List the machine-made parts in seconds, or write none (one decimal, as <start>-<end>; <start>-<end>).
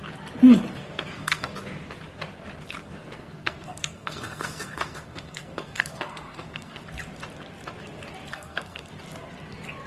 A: 0.7-1.5; 2.8-6.8; 8.3-8.9